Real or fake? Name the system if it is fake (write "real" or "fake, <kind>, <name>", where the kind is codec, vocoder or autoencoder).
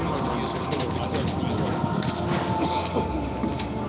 real